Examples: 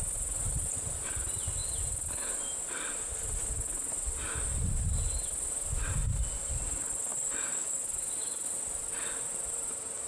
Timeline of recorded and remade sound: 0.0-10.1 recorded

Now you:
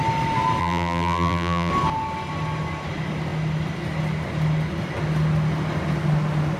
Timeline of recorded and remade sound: 0.0-0.6 recorded; 0.6-1.7 remade; 1.7-6.6 recorded

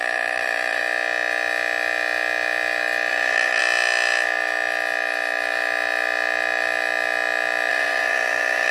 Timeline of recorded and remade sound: 0.0-0.8 remade; 0.8-3.1 recorded; 3.1-3.6 remade; 3.6-7.7 recorded; 7.7-8.7 remade

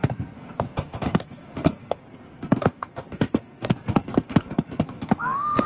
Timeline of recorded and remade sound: 0.0-5.7 remade

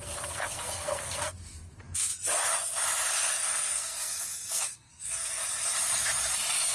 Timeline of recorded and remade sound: 0.0-2.1 remade; 2.1-3.3 recorded; 3.3-5.4 remade; 5.4-6.7 recorded